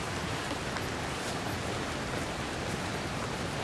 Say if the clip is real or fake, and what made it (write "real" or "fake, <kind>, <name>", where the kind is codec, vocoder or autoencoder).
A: real